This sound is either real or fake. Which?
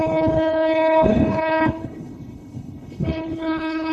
fake